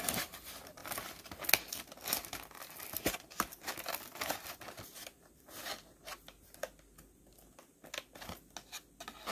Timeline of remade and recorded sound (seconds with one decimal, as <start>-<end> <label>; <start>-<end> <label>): 0.0-9.3 recorded